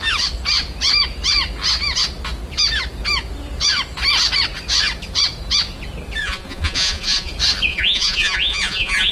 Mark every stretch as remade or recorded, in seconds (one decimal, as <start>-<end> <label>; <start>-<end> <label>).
0.0-6.2 recorded; 6.2-7.3 remade; 7.3-7.7 recorded; 7.7-9.1 remade